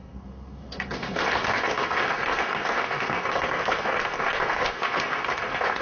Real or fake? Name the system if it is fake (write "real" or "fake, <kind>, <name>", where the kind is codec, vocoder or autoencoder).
fake, codec, SNAC